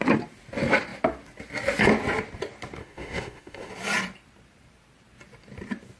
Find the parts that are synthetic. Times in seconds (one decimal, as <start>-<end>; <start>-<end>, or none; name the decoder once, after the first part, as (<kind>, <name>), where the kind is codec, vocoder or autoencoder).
2.8-3.7 (autoencoder, DAC-VAE)